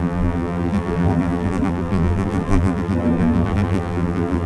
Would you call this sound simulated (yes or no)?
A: yes